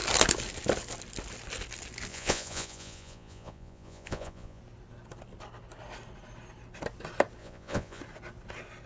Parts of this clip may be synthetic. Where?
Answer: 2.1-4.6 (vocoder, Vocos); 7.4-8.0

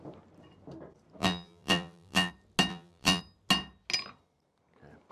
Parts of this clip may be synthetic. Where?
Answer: 1.2-2.3 (vocoder, BigVGAN v2); 2.7-3.2

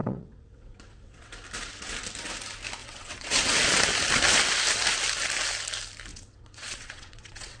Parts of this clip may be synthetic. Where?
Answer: 0.0-1.3 (vocoder, WaveNeXt); 2.8-3.5; 6.1-7.6

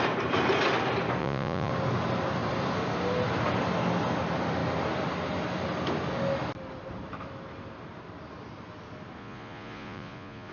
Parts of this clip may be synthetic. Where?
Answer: 1.2-1.7 (vocoder, Vocos); 9.2-10.5

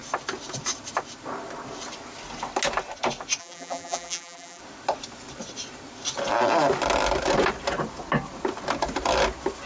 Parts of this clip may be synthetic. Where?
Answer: 3.4-4.6 (vocoder, BigVGAN v2)

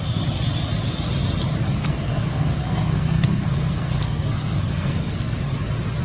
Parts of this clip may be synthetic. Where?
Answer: 1.8-5.4 (codec, SNAC)

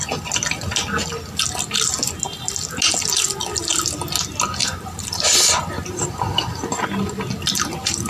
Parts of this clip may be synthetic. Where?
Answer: 4.6-6.7 (vocoder, BigVGAN v2)